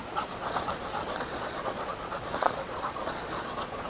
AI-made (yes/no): yes